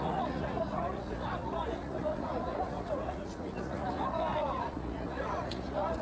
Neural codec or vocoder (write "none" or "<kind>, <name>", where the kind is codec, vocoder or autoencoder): vocoder, Vocos